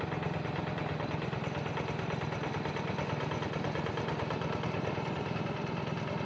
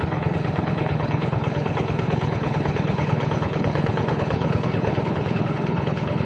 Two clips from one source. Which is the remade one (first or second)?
second